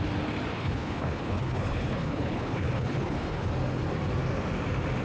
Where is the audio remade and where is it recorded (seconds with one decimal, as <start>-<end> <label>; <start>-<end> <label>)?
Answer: 0.0-0.5 recorded; 0.5-3.5 remade; 3.5-5.0 recorded